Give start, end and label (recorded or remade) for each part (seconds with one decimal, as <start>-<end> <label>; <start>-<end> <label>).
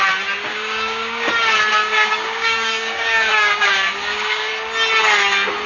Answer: 0.0-0.5 recorded; 0.5-1.3 remade; 1.3-1.8 recorded; 1.8-4.5 remade; 4.5-5.7 recorded